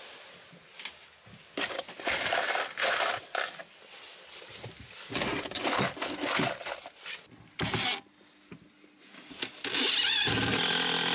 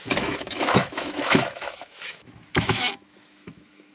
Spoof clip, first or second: second